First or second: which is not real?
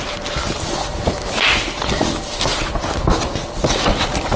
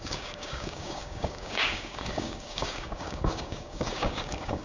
second